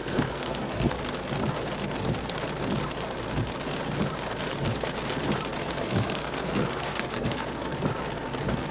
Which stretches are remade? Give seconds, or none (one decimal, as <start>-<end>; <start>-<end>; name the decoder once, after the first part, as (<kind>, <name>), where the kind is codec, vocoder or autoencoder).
0.0-1.0 (codec, SNAC); 5.6-7.7